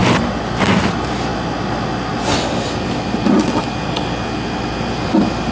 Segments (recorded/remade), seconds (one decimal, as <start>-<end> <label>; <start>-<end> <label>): 0.0-5.5 recorded